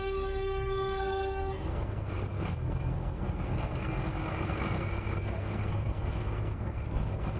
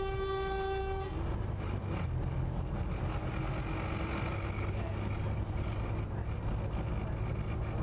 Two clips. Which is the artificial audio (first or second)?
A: first